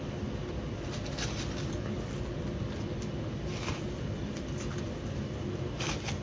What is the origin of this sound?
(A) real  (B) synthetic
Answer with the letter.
A